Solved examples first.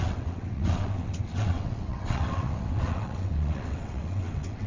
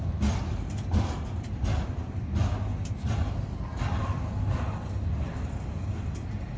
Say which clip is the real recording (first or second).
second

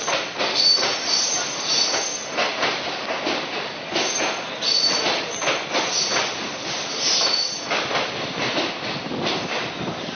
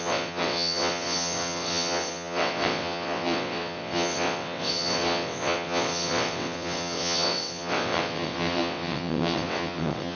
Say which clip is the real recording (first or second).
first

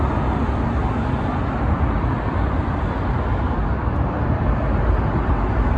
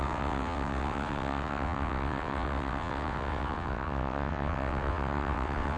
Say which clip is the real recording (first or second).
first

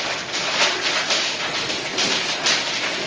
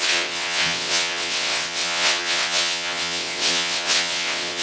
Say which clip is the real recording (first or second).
first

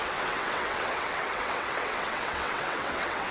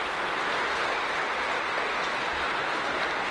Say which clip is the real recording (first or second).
second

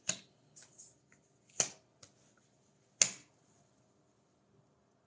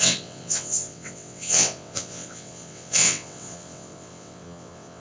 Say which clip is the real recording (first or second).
first